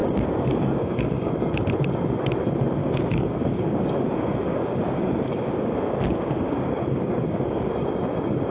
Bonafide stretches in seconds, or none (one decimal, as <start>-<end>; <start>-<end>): 1.3-2.8; 7.7-8.5

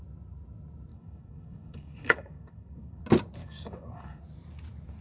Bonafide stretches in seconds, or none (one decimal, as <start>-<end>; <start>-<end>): 0.0-0.9; 3.0-3.4; 4.2-5.0

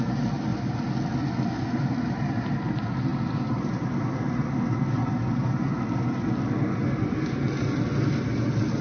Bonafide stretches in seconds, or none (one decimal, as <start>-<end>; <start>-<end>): 0.0-8.8

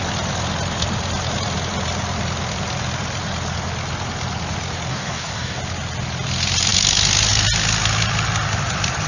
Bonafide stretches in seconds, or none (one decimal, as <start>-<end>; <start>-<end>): 0.0-4.9; 5.6-9.1

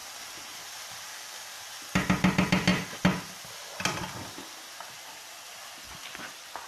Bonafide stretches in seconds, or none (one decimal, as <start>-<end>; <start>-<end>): 0.0-1.1; 1.6-6.7

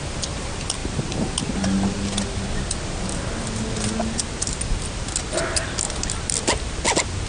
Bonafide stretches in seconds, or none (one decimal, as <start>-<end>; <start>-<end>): 0.0-7.3

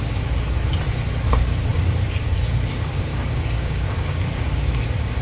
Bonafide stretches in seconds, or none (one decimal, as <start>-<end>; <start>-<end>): 0.0-3.1; 4.8-5.2